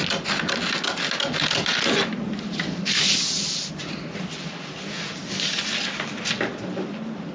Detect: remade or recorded recorded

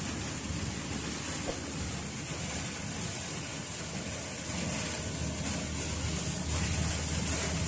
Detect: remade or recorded recorded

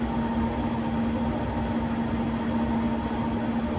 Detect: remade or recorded recorded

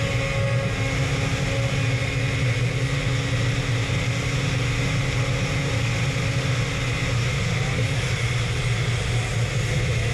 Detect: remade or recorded recorded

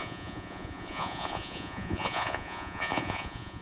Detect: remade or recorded remade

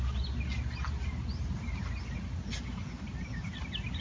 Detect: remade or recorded recorded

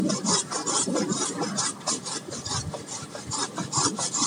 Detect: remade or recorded remade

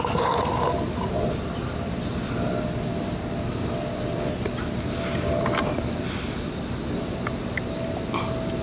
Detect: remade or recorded recorded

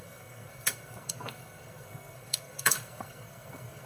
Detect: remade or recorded remade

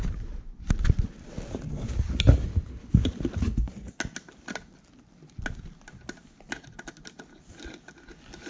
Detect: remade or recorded recorded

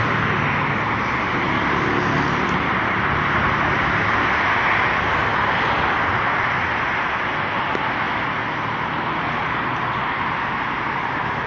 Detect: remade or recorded recorded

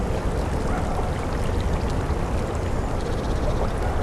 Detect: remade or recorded recorded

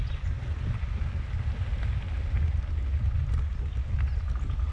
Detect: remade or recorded recorded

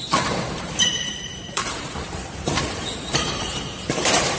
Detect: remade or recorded remade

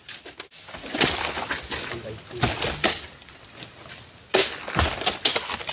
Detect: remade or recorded recorded